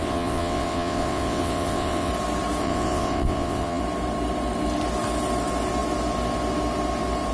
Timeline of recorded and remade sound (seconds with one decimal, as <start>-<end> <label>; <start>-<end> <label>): 0.0-2.1 remade; 2.1-2.6 recorded; 2.6-3.8 remade; 3.8-7.3 recorded

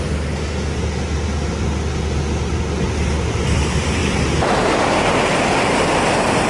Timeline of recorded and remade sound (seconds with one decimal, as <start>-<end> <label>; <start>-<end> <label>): 0.0-4.0 recorded; 4.0-4.6 remade; 4.6-6.5 recorded